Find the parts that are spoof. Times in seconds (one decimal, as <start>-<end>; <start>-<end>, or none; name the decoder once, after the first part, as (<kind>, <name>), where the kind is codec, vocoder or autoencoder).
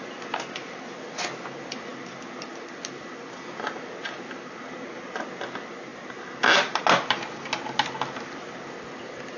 none